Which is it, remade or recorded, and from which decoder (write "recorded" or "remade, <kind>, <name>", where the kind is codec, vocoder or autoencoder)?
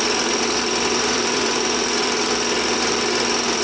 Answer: remade, vocoder, BigVGAN v2